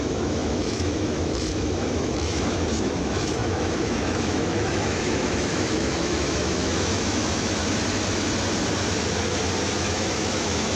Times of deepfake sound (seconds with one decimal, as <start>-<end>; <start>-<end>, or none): 0.0-7.6; 9.8-10.8

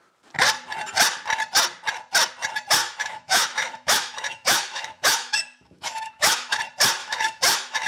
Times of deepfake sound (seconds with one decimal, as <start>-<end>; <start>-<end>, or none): 2.8-6.6; 7.0-7.9

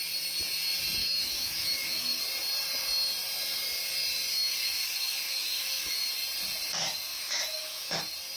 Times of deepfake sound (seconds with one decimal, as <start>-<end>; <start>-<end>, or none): 1.0-2.2; 4.3-6.1; 7.1-8.0